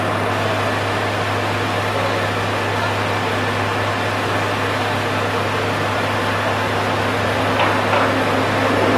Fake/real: real